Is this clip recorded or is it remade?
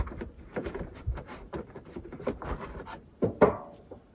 recorded